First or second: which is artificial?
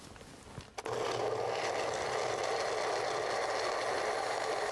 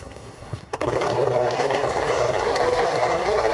second